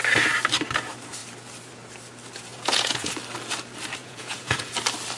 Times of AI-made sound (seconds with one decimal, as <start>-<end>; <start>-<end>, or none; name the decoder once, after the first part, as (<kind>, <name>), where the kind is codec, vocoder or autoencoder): 2.5-3.1 (vocoder, Vocos); 4.0-4.7